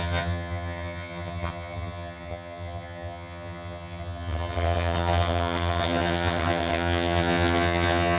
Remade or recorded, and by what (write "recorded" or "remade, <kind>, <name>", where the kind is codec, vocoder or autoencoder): remade, vocoder, HiFi-GAN